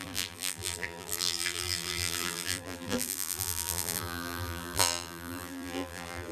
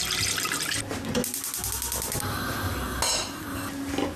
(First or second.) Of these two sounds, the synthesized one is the first